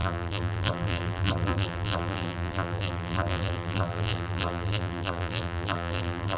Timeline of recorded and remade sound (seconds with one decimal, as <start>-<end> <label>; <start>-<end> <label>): 0.0-6.4 remade

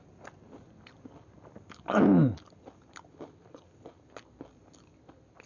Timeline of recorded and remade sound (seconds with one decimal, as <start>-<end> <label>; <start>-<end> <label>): 0.0-5.5 recorded